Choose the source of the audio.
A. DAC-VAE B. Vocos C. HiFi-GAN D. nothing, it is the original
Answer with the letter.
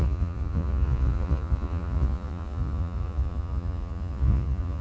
B